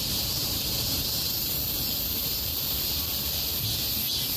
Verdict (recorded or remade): remade